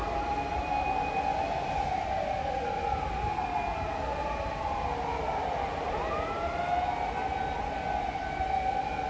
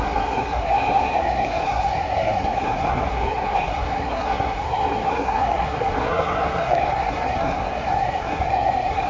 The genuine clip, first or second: first